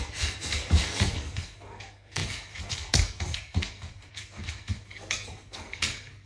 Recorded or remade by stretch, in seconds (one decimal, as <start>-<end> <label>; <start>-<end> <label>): 0.0-6.3 remade